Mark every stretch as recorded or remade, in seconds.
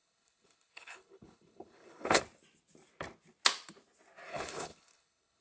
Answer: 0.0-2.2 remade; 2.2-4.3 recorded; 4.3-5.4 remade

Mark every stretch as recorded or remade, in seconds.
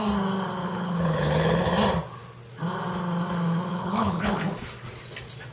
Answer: 0.0-0.6 recorded; 0.6-1.7 remade; 1.7-3.7 recorded; 3.7-4.3 remade; 4.3-5.5 recorded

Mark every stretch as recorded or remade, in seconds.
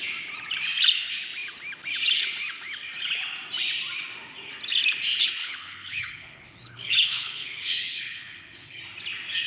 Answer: 0.0-5.4 recorded; 5.4-8.8 remade; 8.8-9.5 recorded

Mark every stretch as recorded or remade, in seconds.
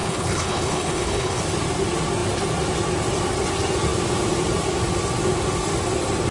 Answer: 0.0-1.4 remade; 1.4-6.3 recorded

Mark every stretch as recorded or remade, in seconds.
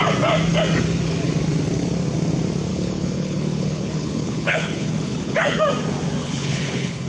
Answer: 0.0-2.7 recorded; 2.7-5.6 remade; 5.6-6.2 recorded; 6.2-7.1 remade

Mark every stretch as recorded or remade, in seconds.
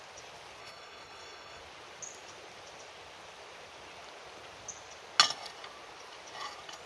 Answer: 0.0-0.6 recorded; 0.6-1.6 remade; 1.6-6.9 recorded